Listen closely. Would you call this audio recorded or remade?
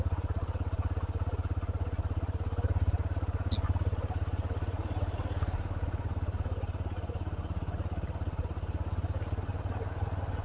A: recorded